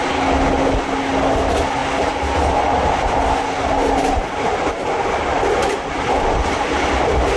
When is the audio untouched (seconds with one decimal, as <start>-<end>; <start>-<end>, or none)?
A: 0.0-7.4